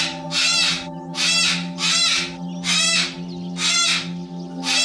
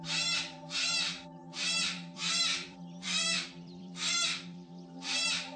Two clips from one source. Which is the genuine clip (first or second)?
first